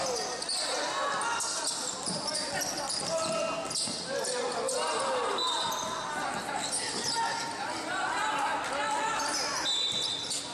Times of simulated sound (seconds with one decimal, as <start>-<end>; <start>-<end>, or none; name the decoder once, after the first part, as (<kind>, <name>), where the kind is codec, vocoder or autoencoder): none